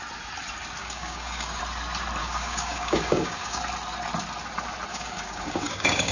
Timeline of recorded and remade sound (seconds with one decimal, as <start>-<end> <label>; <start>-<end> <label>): 0.0-0.8 recorded; 0.8-1.6 remade; 1.6-2.2 recorded; 2.2-3.6 remade; 3.6-4.9 recorded; 4.9-6.1 remade